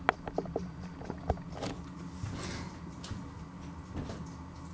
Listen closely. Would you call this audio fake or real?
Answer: real